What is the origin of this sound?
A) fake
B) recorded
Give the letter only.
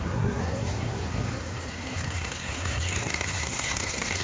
A